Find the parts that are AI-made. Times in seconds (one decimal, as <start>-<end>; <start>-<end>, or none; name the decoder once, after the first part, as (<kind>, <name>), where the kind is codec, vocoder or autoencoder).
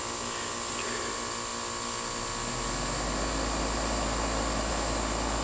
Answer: none